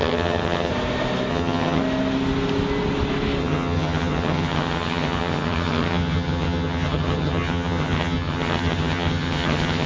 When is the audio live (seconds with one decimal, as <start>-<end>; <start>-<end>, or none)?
0.7-1.3; 1.8-3.4